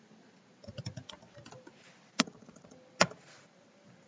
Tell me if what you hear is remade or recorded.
recorded